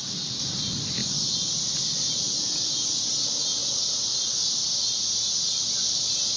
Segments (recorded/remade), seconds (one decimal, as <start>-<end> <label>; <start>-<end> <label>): 0.0-6.4 recorded